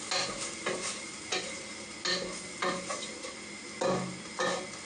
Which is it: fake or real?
real